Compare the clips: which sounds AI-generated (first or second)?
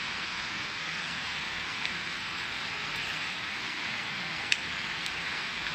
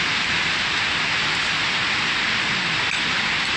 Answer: first